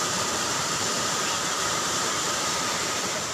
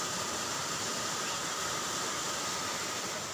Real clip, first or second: second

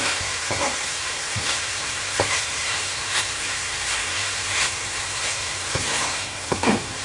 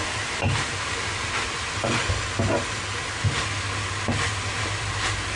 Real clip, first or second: second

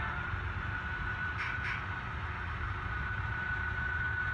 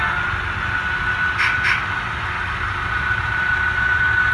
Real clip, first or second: second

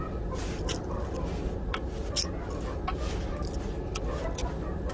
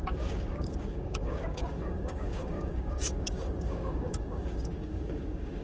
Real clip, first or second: first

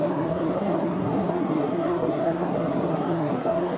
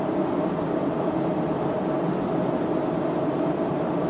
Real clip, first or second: second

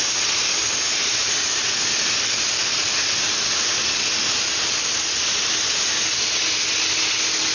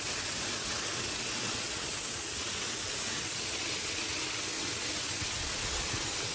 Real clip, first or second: first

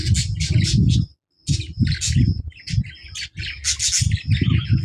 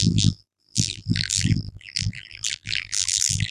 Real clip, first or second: first